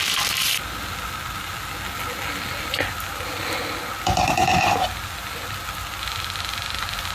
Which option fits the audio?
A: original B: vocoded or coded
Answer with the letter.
A